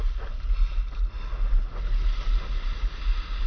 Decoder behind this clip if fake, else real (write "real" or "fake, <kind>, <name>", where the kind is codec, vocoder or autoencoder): real